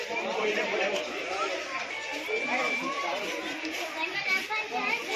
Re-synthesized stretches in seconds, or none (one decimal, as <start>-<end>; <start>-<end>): 2.1-4.5